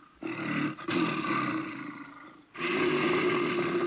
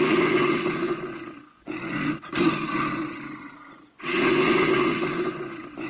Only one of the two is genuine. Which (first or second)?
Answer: first